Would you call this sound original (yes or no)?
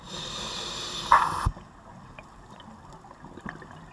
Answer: yes